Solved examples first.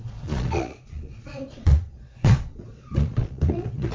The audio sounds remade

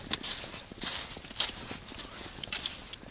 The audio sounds recorded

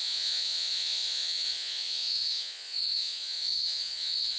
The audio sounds remade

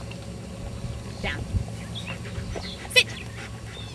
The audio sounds recorded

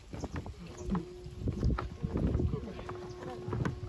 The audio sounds recorded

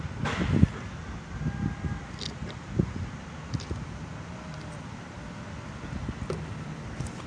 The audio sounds recorded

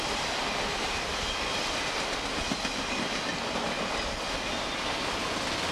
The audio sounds recorded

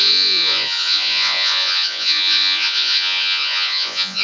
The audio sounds remade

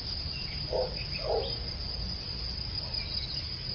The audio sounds recorded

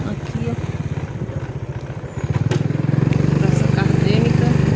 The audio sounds recorded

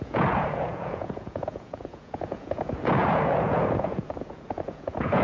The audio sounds remade